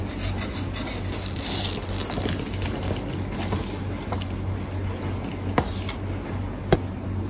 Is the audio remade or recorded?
recorded